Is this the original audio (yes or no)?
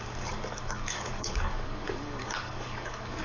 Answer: no